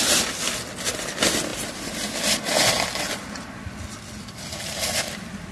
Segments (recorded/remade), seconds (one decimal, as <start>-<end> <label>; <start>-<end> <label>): 0.0-5.5 recorded